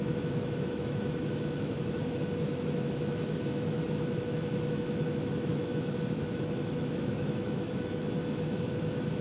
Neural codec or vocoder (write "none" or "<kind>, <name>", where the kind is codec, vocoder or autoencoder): autoencoder, DAC-VAE